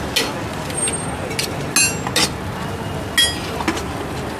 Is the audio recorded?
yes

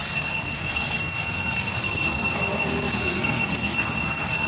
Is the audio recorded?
no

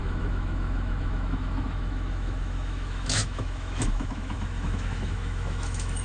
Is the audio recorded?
no